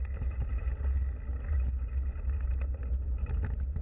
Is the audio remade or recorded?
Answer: recorded